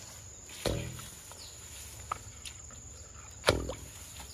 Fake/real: real